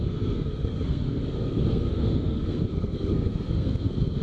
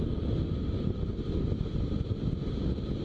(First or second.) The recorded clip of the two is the second